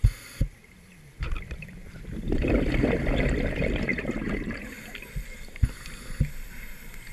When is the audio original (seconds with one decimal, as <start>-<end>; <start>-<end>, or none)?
0.0-1.8; 2.5-3.9; 4.7-7.1